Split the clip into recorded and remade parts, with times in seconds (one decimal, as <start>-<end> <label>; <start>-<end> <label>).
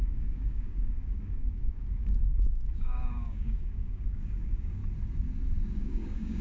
0.0-4.8 remade; 4.8-5.7 recorded; 5.7-6.4 remade